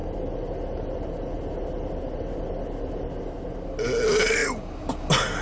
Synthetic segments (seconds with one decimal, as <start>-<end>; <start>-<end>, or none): none

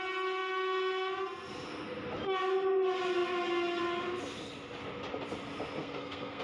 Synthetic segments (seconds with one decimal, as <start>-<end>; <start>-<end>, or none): 5.8-6.4

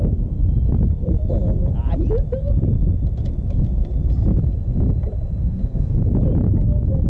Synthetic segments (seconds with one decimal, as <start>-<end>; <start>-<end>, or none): 5.4-6.0

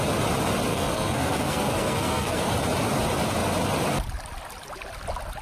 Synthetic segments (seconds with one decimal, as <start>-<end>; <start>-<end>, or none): 0.7-2.5